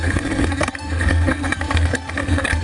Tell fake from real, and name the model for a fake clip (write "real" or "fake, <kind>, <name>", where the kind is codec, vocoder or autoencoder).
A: fake, codec, SNAC